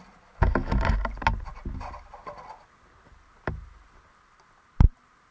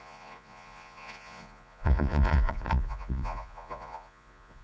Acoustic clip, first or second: first